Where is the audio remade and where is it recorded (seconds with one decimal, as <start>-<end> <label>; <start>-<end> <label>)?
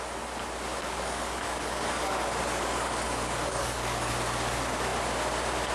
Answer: 0.0-0.7 recorded; 0.7-4.1 remade; 4.1-5.7 recorded